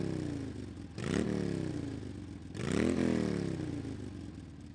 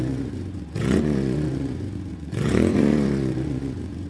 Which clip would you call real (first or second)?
first